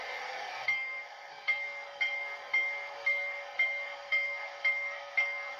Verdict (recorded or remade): remade